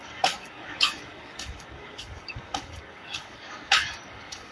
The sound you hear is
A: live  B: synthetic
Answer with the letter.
B